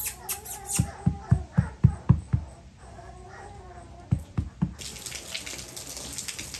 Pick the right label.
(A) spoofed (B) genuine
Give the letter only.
B